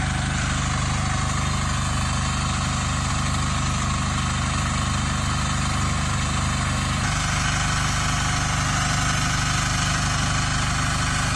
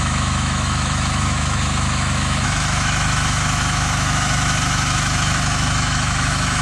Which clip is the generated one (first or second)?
second